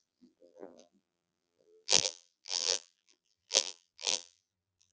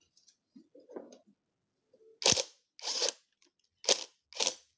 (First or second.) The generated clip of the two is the first